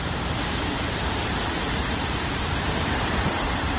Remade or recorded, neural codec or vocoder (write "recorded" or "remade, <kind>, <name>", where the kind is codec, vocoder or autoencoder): remade, vocoder, BigVGAN v2